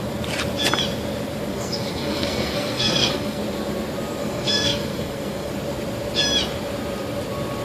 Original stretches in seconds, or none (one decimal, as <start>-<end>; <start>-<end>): 0.0-1.5; 3.4-4.2; 5.5-7.6